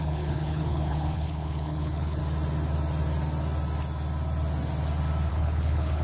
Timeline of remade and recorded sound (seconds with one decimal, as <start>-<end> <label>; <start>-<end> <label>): 0.0-2.2 remade; 2.2-5.3 recorded; 5.3-6.0 remade